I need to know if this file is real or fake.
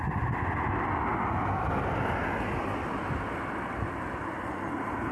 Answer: real